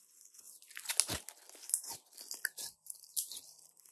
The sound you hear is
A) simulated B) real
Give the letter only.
B